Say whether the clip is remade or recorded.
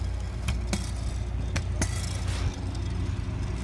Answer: recorded